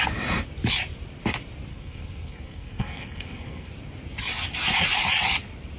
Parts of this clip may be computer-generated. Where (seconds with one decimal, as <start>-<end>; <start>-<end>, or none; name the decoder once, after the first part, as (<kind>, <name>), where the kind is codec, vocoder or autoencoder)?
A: 1.7-3.7 (codec, SNAC)